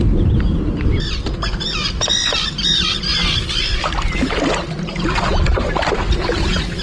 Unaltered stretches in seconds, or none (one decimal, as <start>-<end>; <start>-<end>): 0.0-6.8